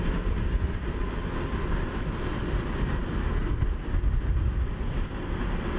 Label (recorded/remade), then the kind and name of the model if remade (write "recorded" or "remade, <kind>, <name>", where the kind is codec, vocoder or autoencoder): recorded